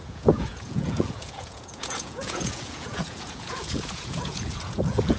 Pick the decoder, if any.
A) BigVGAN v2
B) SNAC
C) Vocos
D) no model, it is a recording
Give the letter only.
C